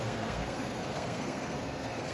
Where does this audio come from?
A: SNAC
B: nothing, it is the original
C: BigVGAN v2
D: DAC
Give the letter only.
A